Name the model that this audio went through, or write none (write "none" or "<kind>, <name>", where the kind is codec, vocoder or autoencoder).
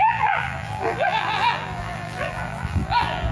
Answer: vocoder, BigVGAN v2